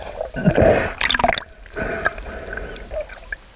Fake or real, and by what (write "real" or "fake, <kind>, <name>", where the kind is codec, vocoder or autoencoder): real